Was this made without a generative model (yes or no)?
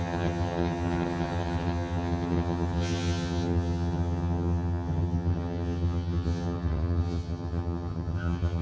no